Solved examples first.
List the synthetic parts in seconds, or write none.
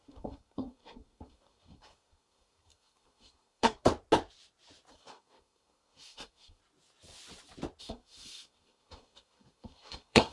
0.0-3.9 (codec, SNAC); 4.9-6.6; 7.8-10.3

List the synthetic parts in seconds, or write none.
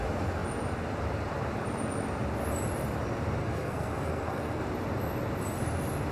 3.4-4.6 (codec, SNAC)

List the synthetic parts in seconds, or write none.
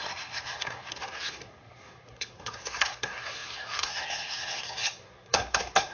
0.0-5.9 (codec, SNAC)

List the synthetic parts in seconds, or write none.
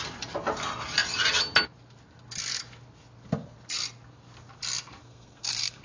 5.0-5.8 (codec, SNAC)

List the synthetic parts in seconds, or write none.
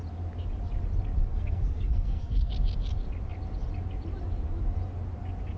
1.3-2.5 (codec, SNAC)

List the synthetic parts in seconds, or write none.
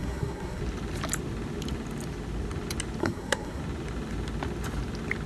0.0-0.6 (codec, SNAC); 3.0-3.6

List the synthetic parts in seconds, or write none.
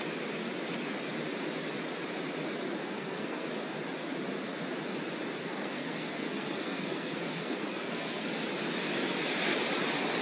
2.8-3.5 (codec, SNAC); 5.4-8.3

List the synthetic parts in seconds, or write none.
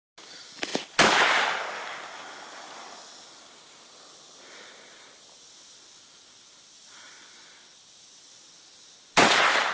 none